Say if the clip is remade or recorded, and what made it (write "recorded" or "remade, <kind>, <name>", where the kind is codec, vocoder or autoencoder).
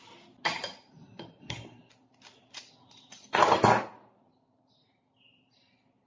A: recorded